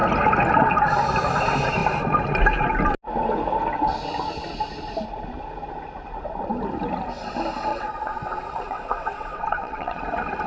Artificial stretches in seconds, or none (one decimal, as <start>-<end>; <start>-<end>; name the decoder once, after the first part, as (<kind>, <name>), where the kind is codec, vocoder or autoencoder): 7.7-10.0 (vocoder, WaveNeXt)

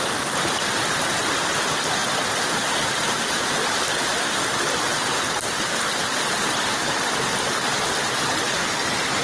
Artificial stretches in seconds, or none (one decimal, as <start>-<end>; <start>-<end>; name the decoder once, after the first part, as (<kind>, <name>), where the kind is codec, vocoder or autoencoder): none

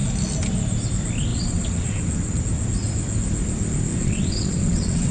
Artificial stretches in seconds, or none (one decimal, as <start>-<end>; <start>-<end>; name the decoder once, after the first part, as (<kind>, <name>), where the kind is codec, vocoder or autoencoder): 1.3-2.4 (vocoder, WaveNeXt); 3.9-5.1